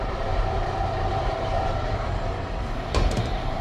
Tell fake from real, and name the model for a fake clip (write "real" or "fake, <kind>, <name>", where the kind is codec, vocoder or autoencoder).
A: fake, vocoder, BigVGAN v2